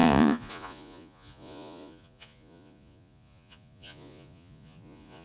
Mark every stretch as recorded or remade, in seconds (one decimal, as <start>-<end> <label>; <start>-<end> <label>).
0.0-5.2 remade